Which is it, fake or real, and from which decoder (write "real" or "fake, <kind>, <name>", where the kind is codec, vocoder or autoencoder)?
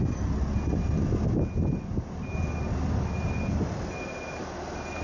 real